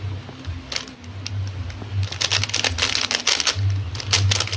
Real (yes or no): yes